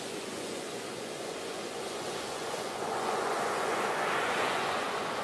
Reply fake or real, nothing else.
fake